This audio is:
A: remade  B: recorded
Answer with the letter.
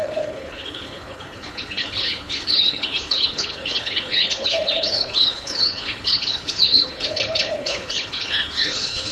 A